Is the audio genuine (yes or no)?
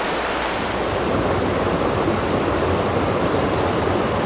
yes